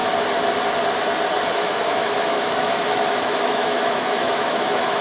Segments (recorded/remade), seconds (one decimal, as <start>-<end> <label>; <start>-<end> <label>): 0.0-1.5 recorded; 1.5-5.0 remade